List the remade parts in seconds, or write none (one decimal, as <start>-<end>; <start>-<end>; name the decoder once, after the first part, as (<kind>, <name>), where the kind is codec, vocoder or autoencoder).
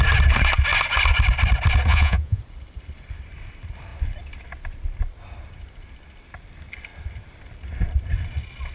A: 1.9-2.4 (vocoder, Vocos)